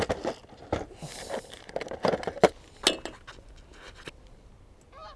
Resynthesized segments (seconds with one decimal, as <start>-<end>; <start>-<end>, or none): 1.1-1.7